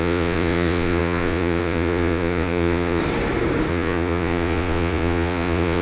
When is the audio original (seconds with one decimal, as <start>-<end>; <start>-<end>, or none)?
3.0-3.7